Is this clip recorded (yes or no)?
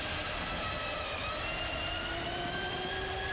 yes